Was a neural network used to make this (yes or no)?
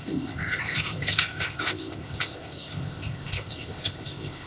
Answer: yes